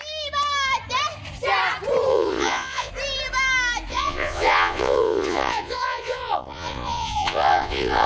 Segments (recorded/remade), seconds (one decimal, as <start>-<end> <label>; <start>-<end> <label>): 0.0-2.1 recorded; 2.1-2.9 remade; 2.9-3.9 recorded; 3.9-8.1 remade